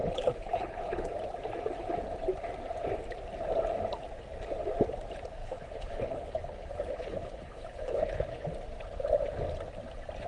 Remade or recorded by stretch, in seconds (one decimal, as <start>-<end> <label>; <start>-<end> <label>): 0.0-1.1 remade; 1.1-5.4 recorded; 5.4-8.5 remade; 8.5-10.3 recorded